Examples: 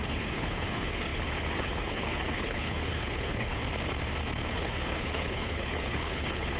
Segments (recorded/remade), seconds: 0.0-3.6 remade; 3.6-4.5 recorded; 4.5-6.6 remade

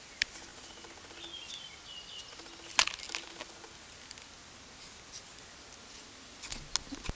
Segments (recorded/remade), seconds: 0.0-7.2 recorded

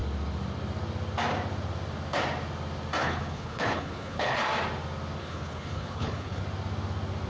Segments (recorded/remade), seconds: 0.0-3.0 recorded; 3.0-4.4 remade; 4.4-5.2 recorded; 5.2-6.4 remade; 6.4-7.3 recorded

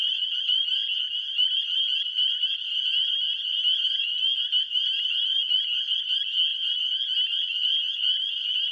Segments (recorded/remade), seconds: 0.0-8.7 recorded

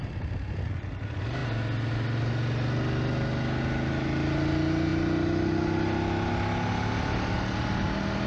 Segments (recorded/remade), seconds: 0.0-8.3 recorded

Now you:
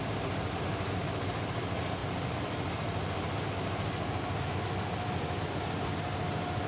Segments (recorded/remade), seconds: 0.0-6.7 recorded